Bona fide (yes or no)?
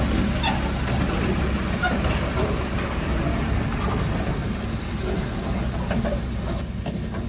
yes